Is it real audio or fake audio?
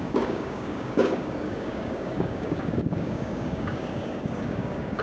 fake